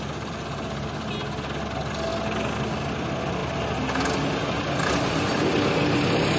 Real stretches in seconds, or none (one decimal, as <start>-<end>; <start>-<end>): 0.0-6.4